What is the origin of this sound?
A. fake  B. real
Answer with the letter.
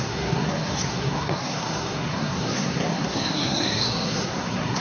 A